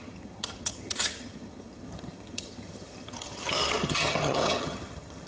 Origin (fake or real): fake